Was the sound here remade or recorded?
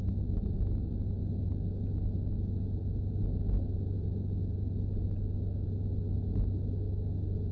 recorded